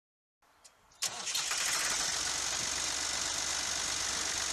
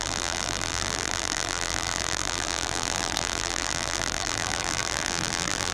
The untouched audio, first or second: first